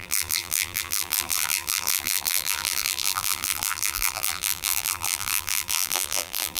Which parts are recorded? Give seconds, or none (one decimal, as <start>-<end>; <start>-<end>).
none